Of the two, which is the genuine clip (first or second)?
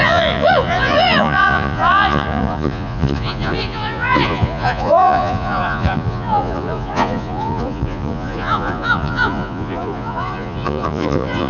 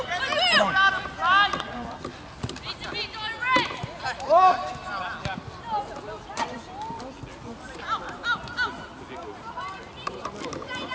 second